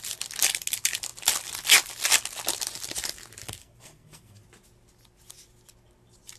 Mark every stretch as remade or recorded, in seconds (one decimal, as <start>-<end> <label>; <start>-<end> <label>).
0.0-3.6 recorded; 3.6-4.4 remade; 4.4-6.4 recorded